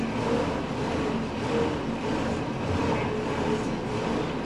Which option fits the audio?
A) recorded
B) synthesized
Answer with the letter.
A